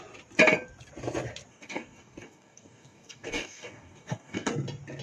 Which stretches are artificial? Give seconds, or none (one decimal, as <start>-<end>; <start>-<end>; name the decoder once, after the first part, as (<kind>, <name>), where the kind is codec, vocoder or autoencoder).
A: 1.5-4.5 (codec, DAC)